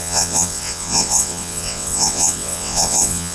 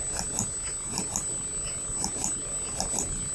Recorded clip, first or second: second